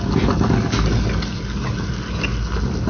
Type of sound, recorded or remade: recorded